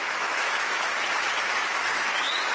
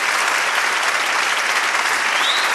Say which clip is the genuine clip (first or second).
second